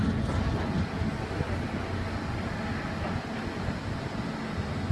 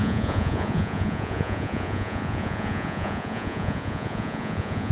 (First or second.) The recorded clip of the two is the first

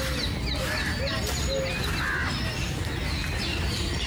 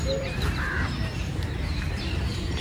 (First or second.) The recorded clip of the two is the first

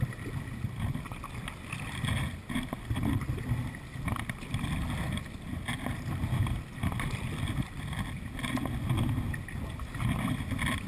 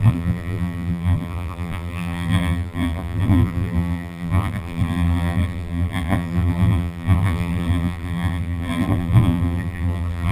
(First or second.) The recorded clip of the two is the first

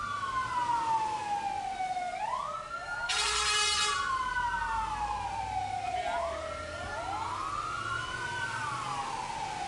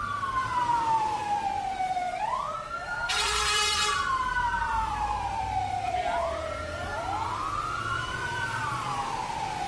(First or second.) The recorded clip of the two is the first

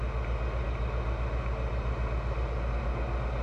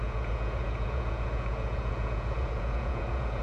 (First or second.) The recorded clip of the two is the first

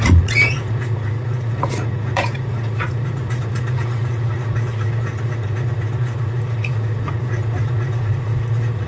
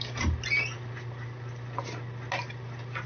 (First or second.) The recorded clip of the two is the second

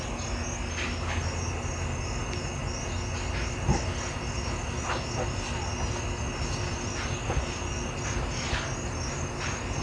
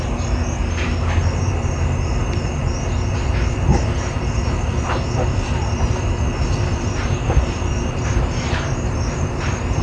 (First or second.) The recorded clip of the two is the first